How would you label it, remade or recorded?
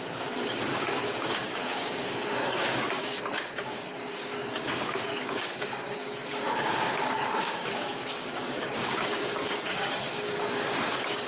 remade